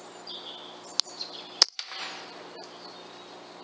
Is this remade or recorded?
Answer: recorded